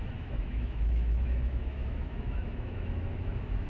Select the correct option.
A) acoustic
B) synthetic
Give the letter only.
B